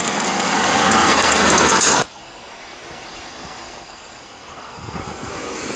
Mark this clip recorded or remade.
remade